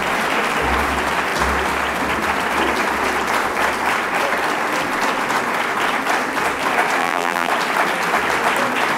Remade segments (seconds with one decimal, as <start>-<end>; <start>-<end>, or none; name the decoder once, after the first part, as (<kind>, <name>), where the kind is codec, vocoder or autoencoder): 7.0-7.5 (vocoder, BigVGAN v2)